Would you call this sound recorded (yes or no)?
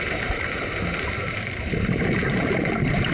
no